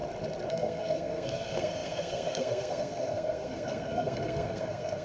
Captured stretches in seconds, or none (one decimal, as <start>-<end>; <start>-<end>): 0.0-0.5